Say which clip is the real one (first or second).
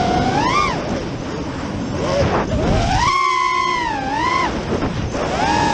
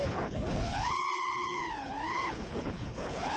first